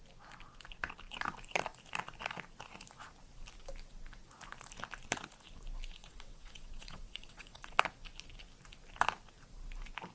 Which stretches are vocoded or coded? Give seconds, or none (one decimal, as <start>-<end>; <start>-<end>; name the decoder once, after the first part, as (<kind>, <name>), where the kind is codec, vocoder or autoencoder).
6.0-7.8 (vocoder, WaveNeXt)